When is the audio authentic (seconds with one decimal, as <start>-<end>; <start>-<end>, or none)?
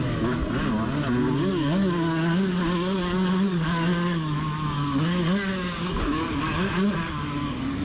0.4-1.2